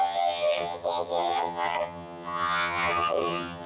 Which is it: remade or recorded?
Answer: remade